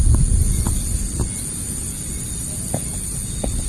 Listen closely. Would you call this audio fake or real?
real